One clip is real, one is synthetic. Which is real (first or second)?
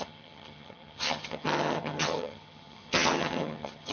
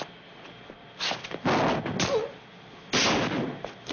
second